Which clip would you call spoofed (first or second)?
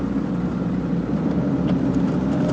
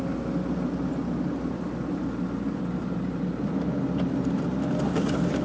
first